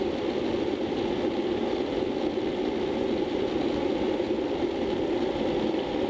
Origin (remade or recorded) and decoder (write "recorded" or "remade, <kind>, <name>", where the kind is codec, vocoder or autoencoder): recorded